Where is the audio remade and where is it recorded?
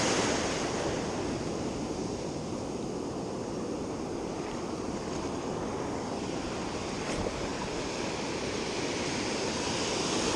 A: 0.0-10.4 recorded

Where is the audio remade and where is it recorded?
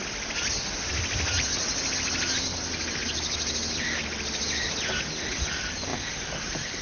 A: 0.0-5.9 recorded; 5.9-6.8 remade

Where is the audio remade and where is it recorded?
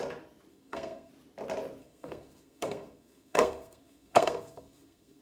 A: 0.0-0.5 recorded; 0.5-1.1 remade; 1.1-1.8 recorded; 1.8-5.2 remade